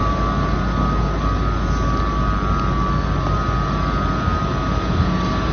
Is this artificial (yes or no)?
no